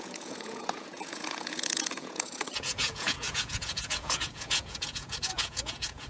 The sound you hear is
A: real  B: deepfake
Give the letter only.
B